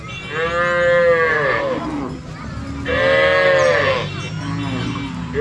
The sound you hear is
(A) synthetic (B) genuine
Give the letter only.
B